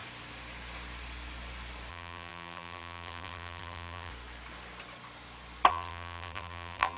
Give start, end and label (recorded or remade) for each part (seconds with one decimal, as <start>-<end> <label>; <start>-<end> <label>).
0.0-1.9 recorded; 1.9-4.1 remade; 4.1-5.7 recorded; 5.7-7.0 remade